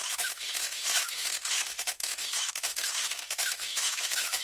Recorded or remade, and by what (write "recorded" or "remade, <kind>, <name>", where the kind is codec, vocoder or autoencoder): remade, autoencoder, DAC-VAE